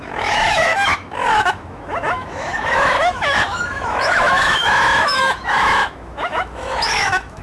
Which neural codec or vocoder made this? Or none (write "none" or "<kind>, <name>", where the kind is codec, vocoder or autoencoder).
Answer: autoencoder, DAC-VAE